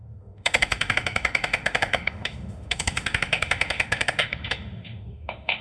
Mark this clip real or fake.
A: fake